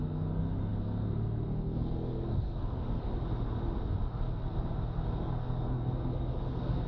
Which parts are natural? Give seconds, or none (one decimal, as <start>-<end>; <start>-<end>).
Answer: 3.1-5.2